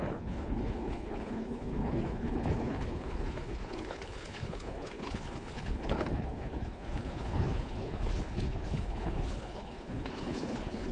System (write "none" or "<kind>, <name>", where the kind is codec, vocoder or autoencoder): codec, HILCodec